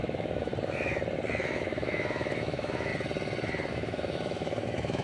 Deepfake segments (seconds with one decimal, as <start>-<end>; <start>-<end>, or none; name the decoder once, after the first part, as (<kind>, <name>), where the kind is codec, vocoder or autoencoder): 0.0-0.5 (autoencoder, DAC-VAE); 1.4-2.9; 3.7-5.0